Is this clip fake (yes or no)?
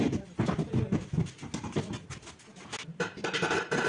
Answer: no